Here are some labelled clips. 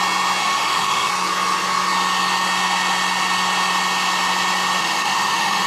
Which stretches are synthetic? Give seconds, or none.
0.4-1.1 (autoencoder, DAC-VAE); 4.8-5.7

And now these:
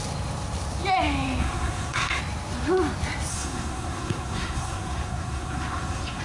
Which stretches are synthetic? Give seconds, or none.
1.4-2.2 (codec, SNAC); 3.3-6.2